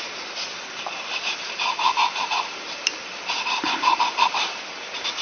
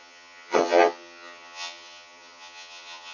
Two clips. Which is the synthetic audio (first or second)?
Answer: second